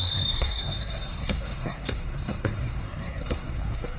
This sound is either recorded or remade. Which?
remade